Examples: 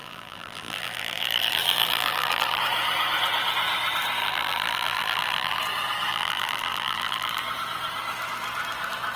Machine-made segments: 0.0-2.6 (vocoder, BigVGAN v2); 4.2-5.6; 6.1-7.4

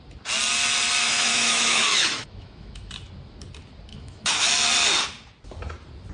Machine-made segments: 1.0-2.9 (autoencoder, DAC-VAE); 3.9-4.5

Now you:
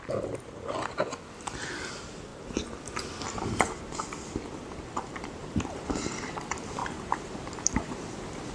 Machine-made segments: 6.8-7.9 (vocoder, BigVGAN v2)